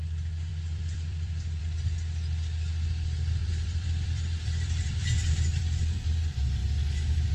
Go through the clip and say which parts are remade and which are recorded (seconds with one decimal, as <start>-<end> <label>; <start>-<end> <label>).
0.0-0.5 recorded; 0.5-1.6 remade; 1.6-3.4 recorded; 3.4-6.1 remade; 6.1-7.3 recorded